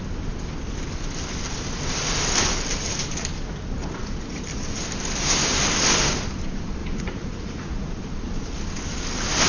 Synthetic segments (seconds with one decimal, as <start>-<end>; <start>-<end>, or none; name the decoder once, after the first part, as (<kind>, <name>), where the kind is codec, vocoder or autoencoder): 3.8-4.4 (vocoder, Vocos); 6.8-7.9